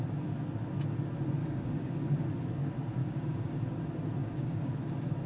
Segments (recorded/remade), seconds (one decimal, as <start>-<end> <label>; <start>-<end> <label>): 0.0-1.4 recorded; 1.4-2.3 remade; 2.3-3.0 recorded; 3.0-3.6 remade; 3.6-4.2 recorded; 4.2-4.7 remade; 4.7-5.3 recorded